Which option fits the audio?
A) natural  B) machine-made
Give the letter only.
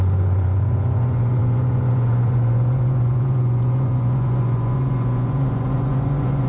B